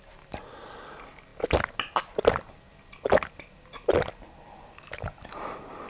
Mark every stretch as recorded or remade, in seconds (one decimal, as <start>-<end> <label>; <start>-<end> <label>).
0.0-5.9 recorded